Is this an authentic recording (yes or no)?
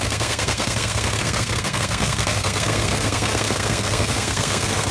no